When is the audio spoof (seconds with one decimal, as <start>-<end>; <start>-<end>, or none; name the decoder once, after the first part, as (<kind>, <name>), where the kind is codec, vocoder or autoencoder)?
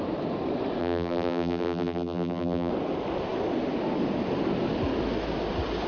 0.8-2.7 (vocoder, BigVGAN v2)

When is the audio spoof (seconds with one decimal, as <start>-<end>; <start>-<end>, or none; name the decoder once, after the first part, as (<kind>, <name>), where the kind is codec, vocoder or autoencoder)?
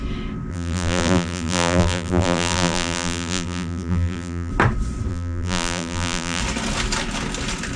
0.5-4.5 (vocoder, BigVGAN v2); 5.1-6.4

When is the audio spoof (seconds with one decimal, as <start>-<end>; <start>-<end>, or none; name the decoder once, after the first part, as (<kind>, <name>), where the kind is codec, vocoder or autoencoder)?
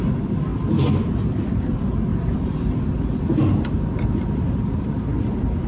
0.0-0.5 (vocoder, BigVGAN v2); 1.5-5.7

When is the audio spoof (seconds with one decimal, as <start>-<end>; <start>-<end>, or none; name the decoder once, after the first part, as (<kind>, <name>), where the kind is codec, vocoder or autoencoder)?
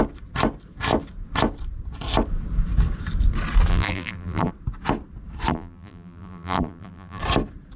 3.7-4.5 (vocoder, BigVGAN v2); 5.5-7.2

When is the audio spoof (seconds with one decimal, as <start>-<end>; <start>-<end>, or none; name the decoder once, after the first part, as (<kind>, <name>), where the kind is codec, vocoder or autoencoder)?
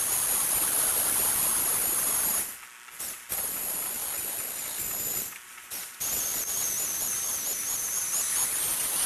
0.0-1.5 (vocoder, BigVGAN v2); 3.3-4.0; 5.2-9.1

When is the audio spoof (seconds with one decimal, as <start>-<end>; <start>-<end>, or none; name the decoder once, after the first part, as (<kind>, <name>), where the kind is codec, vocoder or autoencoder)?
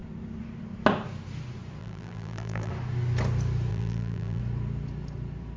1.8-2.7 (vocoder, BigVGAN v2); 3.7-4.4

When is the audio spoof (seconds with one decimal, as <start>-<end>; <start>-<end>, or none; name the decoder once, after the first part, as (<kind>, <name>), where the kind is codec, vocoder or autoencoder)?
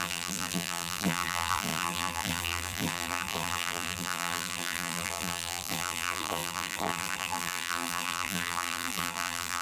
0.0-9.6 (vocoder, BigVGAN v2)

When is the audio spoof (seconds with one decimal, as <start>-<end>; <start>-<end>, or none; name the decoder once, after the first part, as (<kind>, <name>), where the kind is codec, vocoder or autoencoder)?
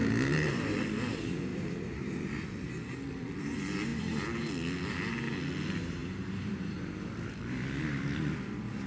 0.0-0.8 (vocoder, BigVGAN v2); 1.5-2.7; 6.0-6.8